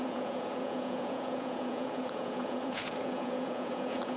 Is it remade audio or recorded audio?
remade